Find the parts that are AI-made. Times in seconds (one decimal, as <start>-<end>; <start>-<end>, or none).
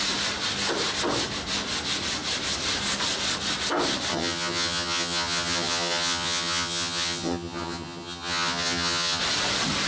4.1-9.2